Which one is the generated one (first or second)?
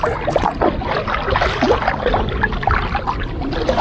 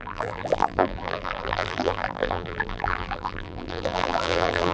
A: second